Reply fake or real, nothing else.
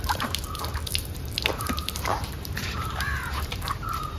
fake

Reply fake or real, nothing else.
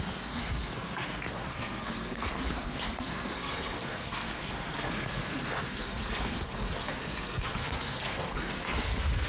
fake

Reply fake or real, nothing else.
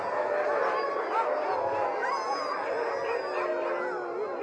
real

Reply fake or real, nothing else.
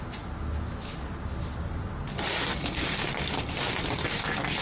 real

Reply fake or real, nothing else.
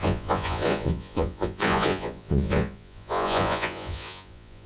fake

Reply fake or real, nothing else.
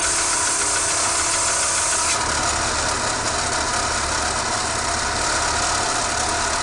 real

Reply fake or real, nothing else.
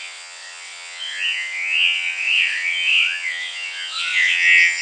fake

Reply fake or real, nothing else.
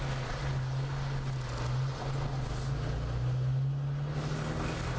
real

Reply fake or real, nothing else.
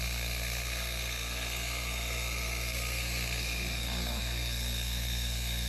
fake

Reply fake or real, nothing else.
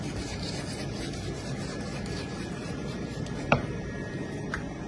fake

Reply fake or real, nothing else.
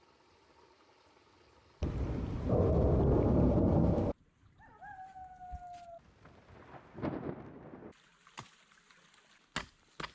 real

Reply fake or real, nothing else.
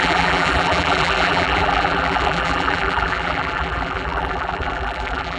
fake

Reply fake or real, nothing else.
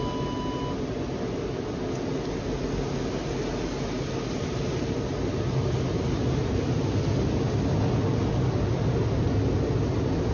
real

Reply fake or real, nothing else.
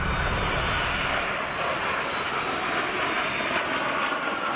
real